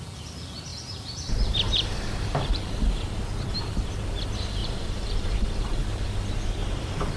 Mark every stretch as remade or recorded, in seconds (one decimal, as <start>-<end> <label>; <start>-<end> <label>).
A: 0.0-0.7 recorded; 0.7-2.7 remade; 2.7-4.6 recorded; 4.6-6.1 remade; 6.1-6.6 recorded; 6.6-7.2 remade